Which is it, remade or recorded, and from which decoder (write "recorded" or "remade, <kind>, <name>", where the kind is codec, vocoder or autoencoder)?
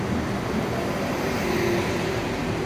recorded